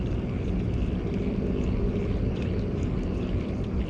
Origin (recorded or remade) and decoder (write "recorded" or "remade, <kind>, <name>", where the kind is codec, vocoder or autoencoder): recorded